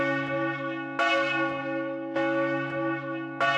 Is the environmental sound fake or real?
real